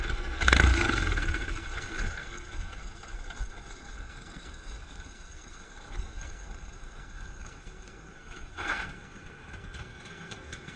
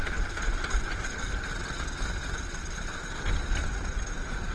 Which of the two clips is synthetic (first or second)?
first